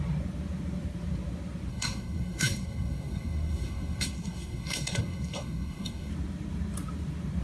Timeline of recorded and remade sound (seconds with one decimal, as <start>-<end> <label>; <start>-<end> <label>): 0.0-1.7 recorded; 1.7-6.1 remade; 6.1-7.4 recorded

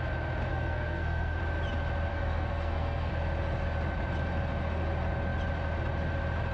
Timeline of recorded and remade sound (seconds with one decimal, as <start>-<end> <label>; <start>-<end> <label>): 0.0-0.5 recorded; 0.5-1.4 remade; 1.4-2.1 recorded; 2.1-3.1 remade; 3.1-6.5 recorded

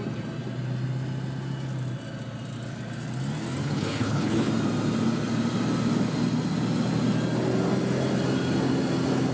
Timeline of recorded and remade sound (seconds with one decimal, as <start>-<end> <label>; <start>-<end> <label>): 0.0-3.6 recorded; 3.6-4.5 remade; 4.5-9.3 recorded